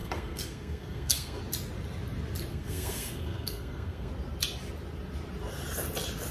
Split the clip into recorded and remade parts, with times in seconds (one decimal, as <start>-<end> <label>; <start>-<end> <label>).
0.0-1.4 remade; 1.4-2.5 recorded; 2.5-4.1 remade; 4.1-6.3 recorded